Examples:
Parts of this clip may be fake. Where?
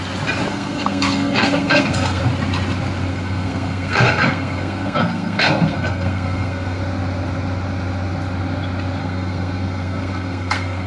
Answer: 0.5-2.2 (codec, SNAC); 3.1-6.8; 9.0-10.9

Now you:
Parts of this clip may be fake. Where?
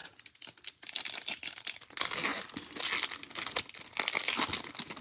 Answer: none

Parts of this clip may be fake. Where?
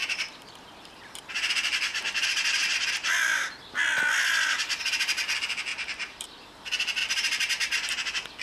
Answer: 0.0-1.5 (vocoder, BigVGAN v2); 5.7-6.4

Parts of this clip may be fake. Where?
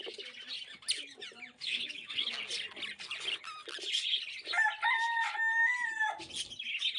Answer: 1.6-2.3 (autoencoder, DAC-VAE)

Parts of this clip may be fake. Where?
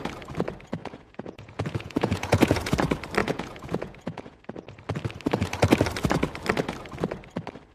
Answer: 0.8-2.7 (vocoder, Vocos); 3.2-4.4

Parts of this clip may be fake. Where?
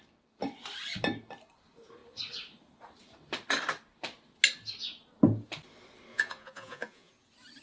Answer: 6.1-7.1 (vocoder, Vocos)